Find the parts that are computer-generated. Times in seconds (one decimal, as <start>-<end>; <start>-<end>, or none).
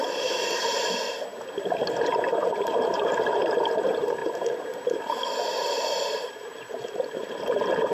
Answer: 0.0-7.9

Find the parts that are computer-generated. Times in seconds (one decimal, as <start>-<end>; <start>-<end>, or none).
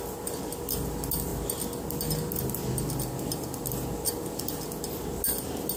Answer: none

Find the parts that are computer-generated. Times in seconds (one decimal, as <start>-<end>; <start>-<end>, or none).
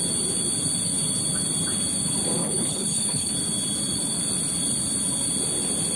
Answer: 2.4-3.3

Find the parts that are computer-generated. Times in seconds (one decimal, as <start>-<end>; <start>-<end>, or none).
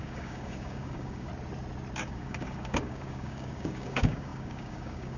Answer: 0.0-1.3; 2.0-5.2